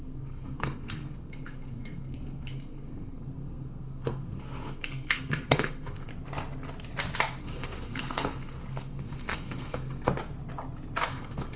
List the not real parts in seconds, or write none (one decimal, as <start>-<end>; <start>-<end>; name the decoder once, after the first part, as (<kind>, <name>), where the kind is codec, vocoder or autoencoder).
0.0-6.1 (codec, SNAC); 7.4-10.1; 11.1-11.6